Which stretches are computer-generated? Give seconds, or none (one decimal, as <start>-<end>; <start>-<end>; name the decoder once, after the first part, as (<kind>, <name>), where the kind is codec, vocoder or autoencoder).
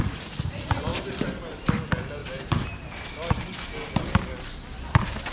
0.9-1.8 (vocoder, BigVGAN v2); 2.2-3.6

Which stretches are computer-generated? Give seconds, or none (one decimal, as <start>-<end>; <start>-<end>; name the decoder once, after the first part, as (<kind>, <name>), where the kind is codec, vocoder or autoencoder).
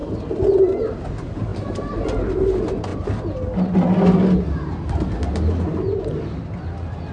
none